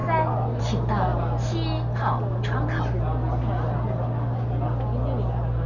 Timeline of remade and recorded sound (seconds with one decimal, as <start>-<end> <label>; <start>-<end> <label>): 0.0-5.7 recorded